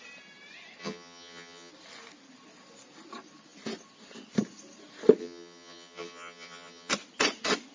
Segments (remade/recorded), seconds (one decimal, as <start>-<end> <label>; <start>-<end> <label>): 0.0-0.8 recorded; 0.8-1.7 remade; 1.7-5.2 recorded; 5.2-6.9 remade; 6.9-7.7 recorded